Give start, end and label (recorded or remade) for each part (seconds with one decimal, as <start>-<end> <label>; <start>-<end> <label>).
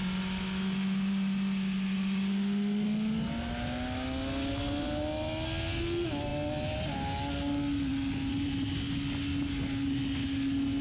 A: 0.0-10.8 recorded